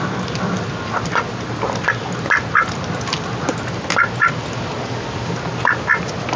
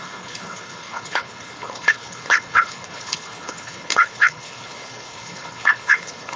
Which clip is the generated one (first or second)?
second